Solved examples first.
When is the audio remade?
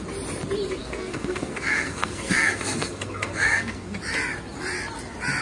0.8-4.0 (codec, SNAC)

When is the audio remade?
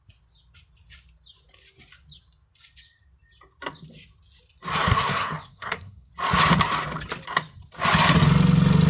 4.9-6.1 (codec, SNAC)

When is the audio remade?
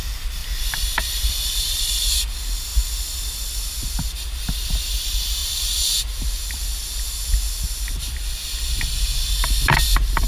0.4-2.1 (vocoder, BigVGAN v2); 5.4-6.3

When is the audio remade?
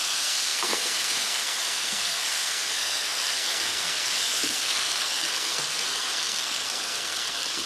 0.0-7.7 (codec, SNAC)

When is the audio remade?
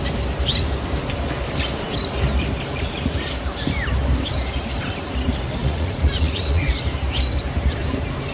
5.6-6.7 (vocoder, Vocos)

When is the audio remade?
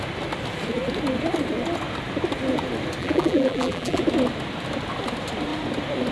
3.0-4.0 (vocoder, BigVGAN v2)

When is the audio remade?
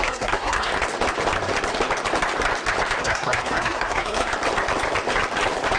0.0-0.7 (codec, SNAC); 3.0-4.3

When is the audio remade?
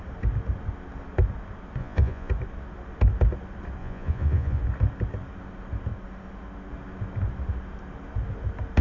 1.8-2.3 (vocoder, Vocos); 3.8-4.6